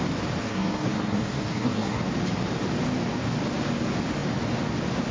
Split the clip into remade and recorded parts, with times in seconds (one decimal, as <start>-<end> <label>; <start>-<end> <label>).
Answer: 0.0-0.4 recorded; 0.4-2.0 remade; 2.0-5.1 recorded